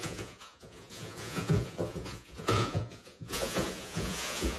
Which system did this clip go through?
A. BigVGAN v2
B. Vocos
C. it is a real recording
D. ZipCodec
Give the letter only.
B